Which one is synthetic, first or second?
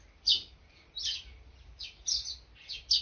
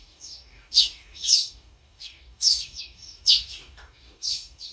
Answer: second